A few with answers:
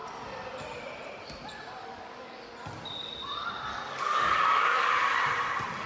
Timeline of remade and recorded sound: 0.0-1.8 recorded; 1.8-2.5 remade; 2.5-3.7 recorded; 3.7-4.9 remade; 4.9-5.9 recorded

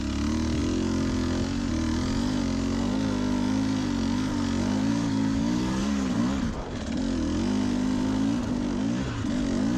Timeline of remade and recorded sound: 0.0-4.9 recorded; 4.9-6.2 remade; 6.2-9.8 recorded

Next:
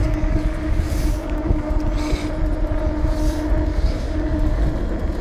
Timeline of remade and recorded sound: 0.0-1.7 remade; 1.7-3.7 recorded; 3.7-4.6 remade; 4.6-5.2 recorded

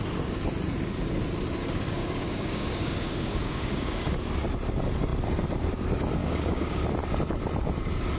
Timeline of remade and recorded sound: 0.0-1.6 recorded; 1.6-4.1 remade; 4.1-6.2 recorded; 6.2-6.8 remade; 6.8-8.2 recorded

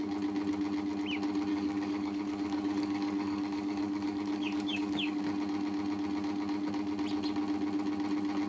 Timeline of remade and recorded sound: 0.0-1.5 recorded; 1.5-5.2 remade; 5.2-8.5 recorded